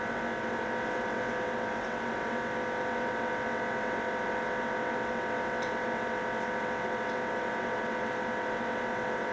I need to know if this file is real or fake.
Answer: real